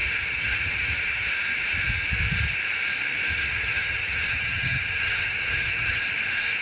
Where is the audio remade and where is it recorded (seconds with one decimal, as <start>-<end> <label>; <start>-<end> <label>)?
0.0-1.3 remade; 1.3-3.3 recorded; 3.3-6.0 remade; 6.0-6.6 recorded